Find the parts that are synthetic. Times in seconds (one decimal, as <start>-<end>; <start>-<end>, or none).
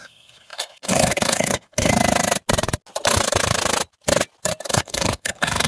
0.0-1.9; 4.7-5.7